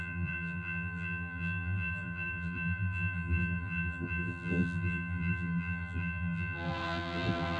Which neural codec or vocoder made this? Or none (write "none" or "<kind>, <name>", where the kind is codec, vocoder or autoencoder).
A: vocoder, BigVGAN v2